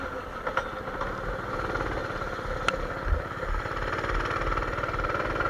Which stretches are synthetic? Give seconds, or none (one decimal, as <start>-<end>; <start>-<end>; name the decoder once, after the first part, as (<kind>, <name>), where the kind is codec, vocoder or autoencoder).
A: none